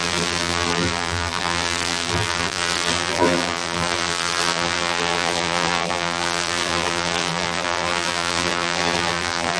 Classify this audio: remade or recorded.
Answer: remade